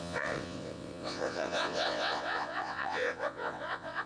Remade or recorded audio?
remade